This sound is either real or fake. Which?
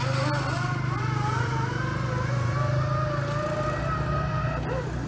real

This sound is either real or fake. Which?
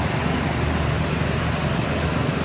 real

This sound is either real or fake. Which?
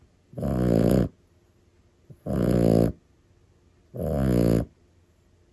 real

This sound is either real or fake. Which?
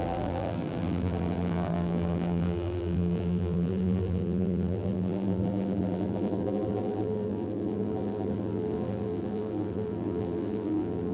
fake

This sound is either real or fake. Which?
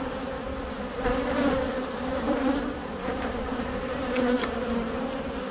fake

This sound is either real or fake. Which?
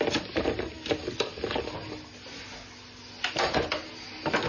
real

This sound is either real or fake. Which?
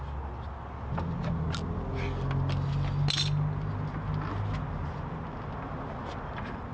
real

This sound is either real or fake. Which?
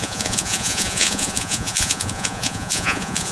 fake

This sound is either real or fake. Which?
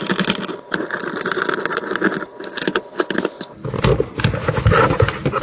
real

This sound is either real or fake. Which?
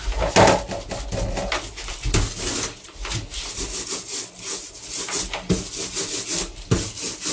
real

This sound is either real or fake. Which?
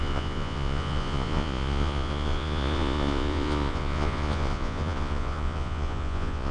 fake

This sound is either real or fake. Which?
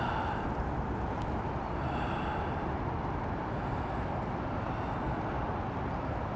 real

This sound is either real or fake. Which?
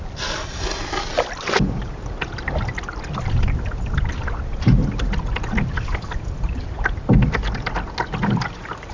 real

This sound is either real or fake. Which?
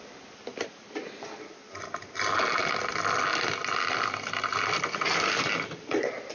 real